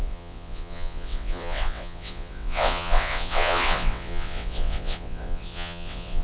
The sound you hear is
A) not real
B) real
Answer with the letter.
A